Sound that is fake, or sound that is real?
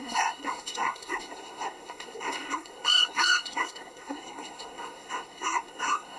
fake